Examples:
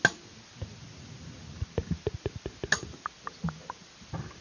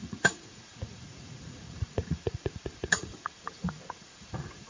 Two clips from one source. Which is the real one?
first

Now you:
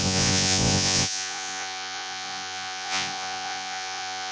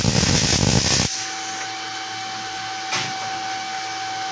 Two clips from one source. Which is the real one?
second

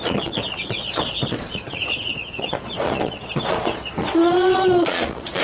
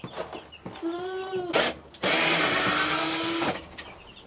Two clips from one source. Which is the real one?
second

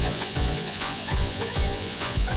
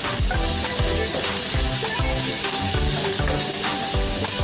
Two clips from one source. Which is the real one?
second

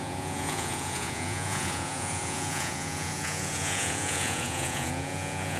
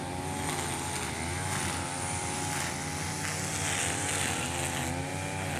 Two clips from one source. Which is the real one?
second